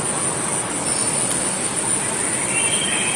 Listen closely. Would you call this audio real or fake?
real